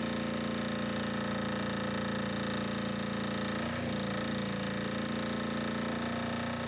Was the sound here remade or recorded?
recorded